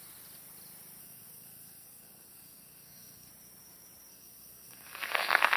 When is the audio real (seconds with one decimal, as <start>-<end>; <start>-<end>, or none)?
0.0-1.0; 3.3-4.1